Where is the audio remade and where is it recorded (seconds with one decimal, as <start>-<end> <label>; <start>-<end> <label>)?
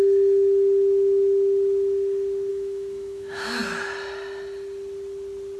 0.0-2.5 recorded; 2.5-3.6 remade; 3.6-5.6 recorded